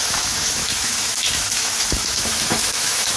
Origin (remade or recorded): remade